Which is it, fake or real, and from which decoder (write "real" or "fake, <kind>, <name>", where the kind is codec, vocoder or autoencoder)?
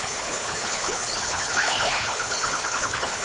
fake, codec, HILCodec